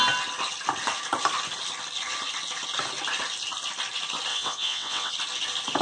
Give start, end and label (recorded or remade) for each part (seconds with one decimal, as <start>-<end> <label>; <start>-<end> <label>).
0.0-4.3 recorded; 4.3-5.1 remade; 5.1-5.8 recorded